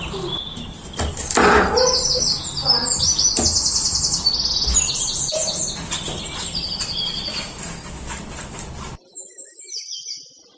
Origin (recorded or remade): recorded